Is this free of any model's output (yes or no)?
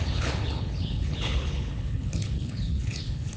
no